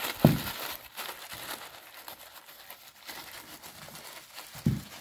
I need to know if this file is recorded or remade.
recorded